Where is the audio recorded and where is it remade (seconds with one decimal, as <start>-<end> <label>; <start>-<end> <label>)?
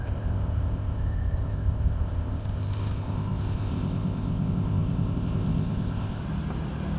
0.0-6.2 remade; 6.2-7.0 recorded